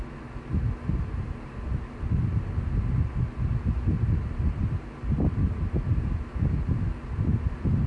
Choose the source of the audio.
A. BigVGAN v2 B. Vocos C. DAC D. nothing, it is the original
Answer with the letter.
D